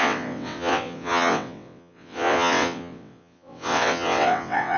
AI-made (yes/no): yes